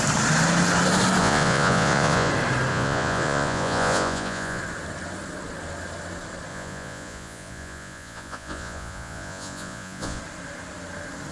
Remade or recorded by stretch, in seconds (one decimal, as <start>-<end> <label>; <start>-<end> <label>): 0.0-1.2 recorded; 1.2-2.3 remade; 2.3-2.7 recorded; 2.7-4.6 remade; 4.6-6.5 recorded; 6.5-10.2 remade; 10.2-11.3 recorded